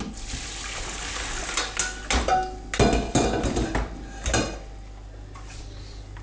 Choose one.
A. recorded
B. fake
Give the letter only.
A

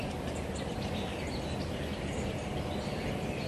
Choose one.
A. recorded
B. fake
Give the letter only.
A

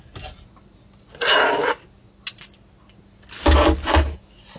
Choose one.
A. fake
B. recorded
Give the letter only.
B